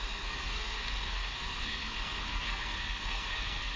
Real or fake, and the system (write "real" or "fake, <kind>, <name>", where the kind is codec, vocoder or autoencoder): fake, codec, SNAC